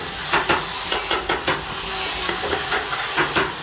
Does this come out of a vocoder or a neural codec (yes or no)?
no